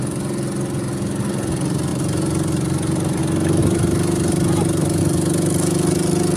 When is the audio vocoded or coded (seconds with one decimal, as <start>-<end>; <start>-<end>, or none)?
1.9-3.2; 3.6-5.0